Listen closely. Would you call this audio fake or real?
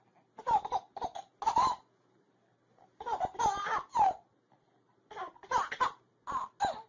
real